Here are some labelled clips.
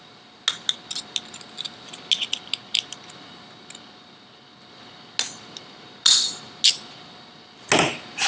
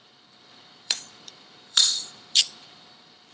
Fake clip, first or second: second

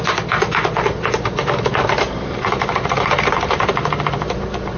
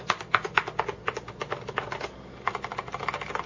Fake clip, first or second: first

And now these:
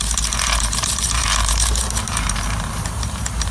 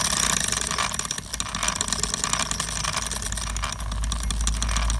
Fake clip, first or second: first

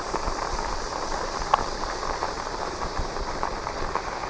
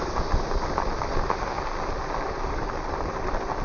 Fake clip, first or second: first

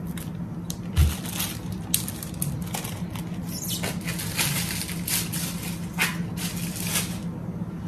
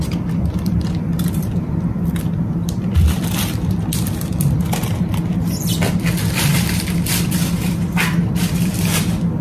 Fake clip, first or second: second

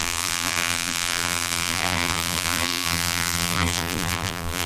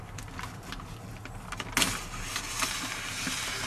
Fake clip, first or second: first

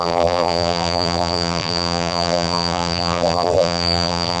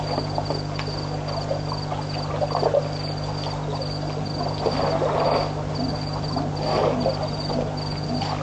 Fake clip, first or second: first